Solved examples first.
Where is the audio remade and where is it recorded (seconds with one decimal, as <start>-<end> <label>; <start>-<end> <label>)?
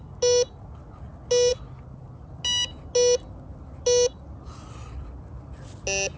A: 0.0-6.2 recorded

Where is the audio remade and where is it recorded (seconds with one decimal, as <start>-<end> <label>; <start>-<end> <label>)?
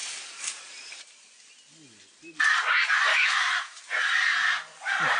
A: 0.0-3.1 recorded; 3.1-3.8 remade; 3.8-5.2 recorded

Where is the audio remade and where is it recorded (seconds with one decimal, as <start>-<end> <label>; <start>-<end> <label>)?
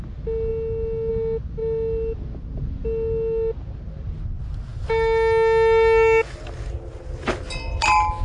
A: 0.0-8.2 recorded